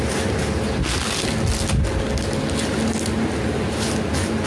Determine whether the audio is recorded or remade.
recorded